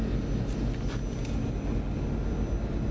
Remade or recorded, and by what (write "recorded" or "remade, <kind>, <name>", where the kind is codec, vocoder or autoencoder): recorded